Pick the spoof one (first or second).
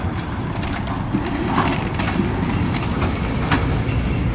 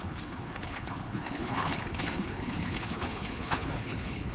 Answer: second